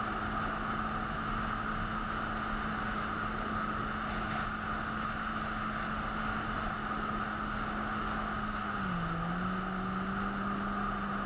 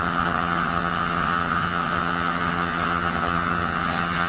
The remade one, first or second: second